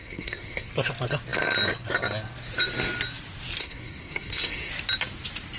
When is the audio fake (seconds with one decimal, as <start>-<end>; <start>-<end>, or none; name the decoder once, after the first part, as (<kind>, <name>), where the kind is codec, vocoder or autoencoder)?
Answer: 0.0-0.7 (codec, SNAC); 3.6-4.7